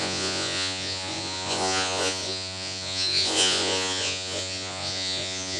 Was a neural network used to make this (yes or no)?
yes